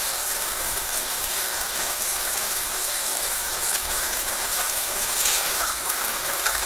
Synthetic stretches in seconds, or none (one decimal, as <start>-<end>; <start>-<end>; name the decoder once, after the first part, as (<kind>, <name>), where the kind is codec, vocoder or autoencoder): 0.0-6.7 (codec, DAC)